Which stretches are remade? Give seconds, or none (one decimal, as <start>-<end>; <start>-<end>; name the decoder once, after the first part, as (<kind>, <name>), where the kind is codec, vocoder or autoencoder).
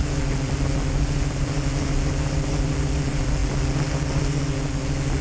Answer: none